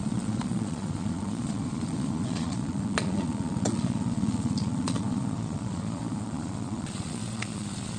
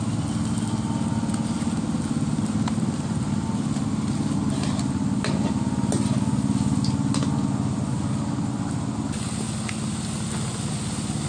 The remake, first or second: first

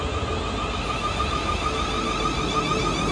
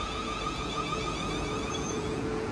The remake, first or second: second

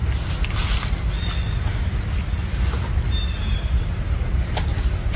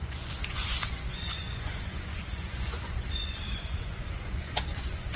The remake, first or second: second